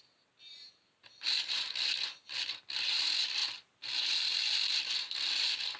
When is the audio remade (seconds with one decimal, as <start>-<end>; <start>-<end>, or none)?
none